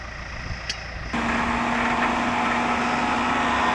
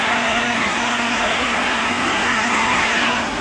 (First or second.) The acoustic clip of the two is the first